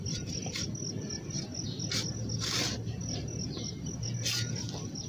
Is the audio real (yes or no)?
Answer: yes